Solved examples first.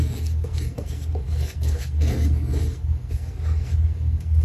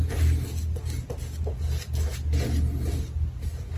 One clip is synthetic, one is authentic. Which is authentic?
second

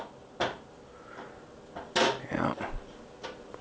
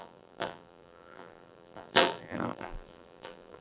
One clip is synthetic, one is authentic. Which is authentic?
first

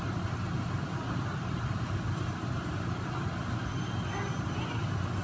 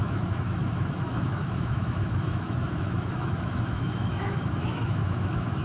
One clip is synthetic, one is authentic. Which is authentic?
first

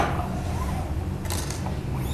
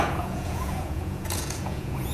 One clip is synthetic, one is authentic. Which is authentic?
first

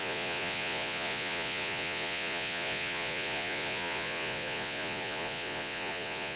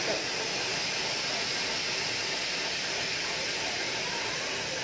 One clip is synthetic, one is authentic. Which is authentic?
second